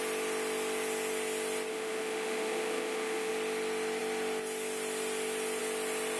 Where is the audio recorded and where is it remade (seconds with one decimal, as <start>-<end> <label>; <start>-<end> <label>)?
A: 0.0-1.7 recorded; 1.7-3.3 remade; 3.3-6.2 recorded